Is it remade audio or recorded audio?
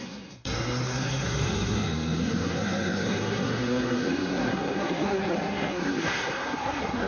remade